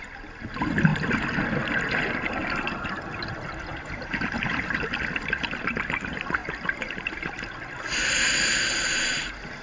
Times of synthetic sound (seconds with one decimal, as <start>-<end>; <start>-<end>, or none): none